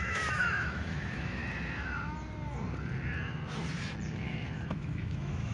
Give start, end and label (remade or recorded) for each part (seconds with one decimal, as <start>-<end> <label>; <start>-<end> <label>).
0.0-1.4 remade; 1.4-4.1 recorded; 4.1-5.5 remade